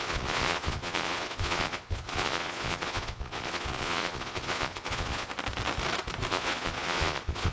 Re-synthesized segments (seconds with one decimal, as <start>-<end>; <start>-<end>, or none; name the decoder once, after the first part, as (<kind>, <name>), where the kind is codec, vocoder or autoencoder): 0.0-5.3 (vocoder, Vocos); 6.3-7.5